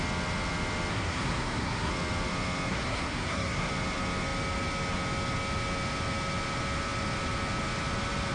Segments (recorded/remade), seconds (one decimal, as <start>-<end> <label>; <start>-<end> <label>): 0.0-0.9 recorded; 0.9-1.9 remade; 1.9-2.7 recorded; 2.7-3.7 remade; 3.7-8.3 recorded